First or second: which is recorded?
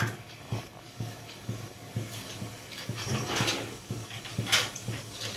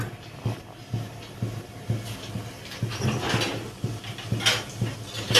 second